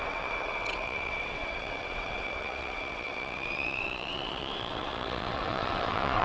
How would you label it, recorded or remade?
remade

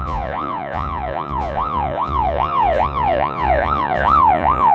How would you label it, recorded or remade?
remade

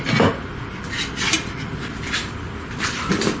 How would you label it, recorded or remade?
recorded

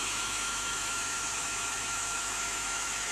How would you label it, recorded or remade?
remade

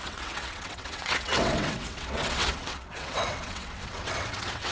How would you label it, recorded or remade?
remade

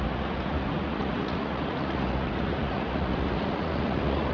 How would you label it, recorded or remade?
remade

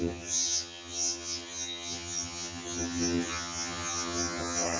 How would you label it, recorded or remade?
remade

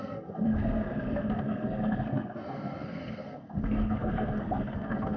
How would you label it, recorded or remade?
remade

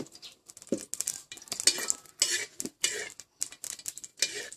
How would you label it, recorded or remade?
recorded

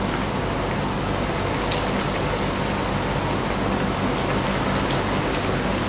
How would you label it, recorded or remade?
recorded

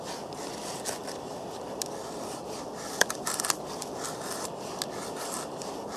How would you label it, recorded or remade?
recorded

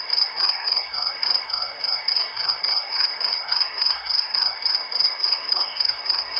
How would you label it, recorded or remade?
remade